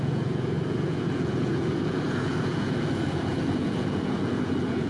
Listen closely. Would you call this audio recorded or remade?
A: remade